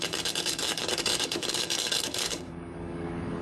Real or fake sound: fake